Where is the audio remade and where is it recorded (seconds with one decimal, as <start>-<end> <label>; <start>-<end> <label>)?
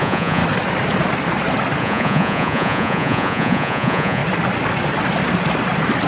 0.0-0.4 remade; 0.4-1.8 recorded; 1.8-4.2 remade; 4.2-6.1 recorded